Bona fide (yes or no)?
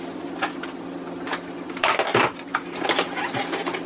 yes